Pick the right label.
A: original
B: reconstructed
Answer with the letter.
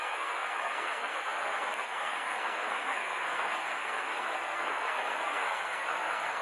B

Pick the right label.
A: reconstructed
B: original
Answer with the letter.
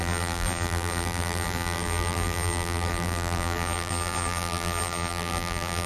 A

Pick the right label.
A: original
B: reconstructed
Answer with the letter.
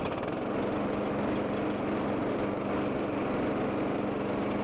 A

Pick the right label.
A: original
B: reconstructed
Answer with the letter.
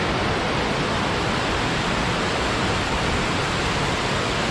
A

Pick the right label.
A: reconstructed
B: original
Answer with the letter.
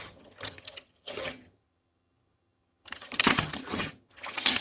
A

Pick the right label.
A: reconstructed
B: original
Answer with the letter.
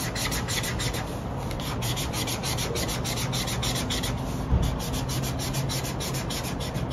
B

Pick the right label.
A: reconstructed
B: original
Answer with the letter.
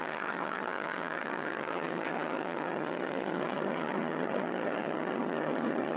A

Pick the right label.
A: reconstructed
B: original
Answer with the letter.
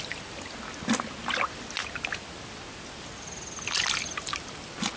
B